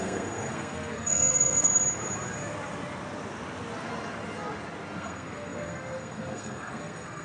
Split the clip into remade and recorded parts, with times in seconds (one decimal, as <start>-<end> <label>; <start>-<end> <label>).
0.0-1.7 remade; 1.7-5.0 recorded; 5.0-7.2 remade